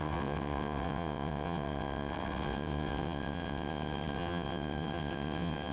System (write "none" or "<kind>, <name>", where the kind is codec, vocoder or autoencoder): vocoder, WaveNeXt